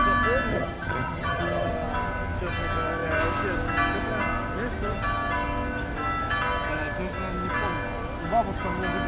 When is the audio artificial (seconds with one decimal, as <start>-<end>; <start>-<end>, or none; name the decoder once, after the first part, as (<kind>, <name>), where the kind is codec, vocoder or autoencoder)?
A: 0.5-1.7 (vocoder, HiFi-GAN)